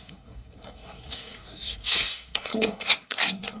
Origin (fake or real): fake